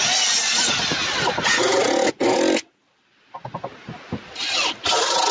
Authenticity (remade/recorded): recorded